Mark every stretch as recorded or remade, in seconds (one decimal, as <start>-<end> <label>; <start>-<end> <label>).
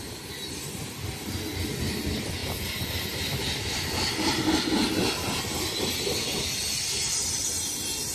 0.0-8.1 recorded